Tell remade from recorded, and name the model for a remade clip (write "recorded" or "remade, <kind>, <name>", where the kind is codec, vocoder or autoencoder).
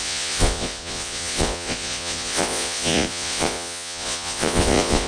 remade, vocoder, Vocos